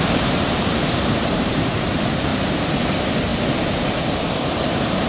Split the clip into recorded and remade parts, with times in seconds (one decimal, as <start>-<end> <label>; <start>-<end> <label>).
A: 0.0-2.3 remade; 2.3-2.9 recorded; 2.9-3.3 remade; 3.3-4.3 recorded; 4.3-5.1 remade